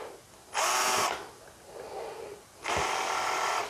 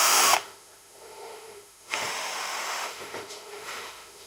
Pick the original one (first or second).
first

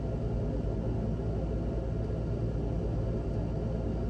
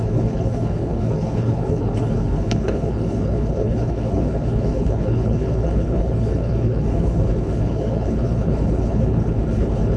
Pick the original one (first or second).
first